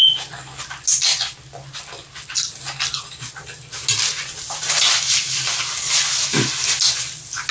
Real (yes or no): yes